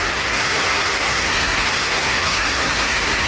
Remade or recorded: remade